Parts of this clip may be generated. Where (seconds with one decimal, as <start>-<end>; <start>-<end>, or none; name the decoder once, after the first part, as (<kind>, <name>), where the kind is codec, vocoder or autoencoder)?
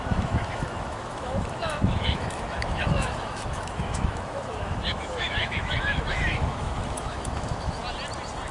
0.0-7.8 (autoencoder, DAC-VAE)